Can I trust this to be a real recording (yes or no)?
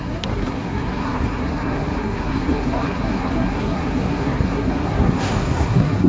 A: no